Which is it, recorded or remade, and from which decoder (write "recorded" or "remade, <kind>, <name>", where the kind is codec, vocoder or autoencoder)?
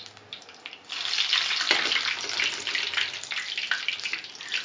recorded